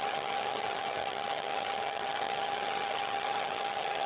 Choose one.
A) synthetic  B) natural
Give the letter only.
A